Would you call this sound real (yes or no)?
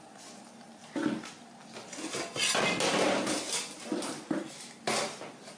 yes